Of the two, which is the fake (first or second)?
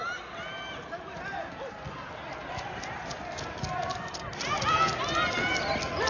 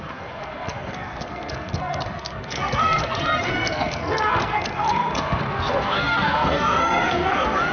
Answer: second